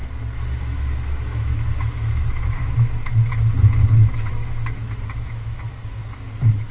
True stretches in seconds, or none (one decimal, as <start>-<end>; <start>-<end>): 0.0-0.6; 6.0-6.7